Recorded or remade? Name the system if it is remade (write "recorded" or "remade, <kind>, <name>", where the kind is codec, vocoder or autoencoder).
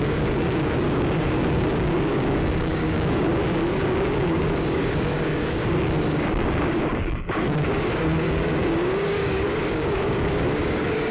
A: remade, codec, DAC